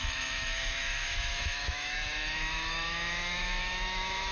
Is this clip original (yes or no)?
no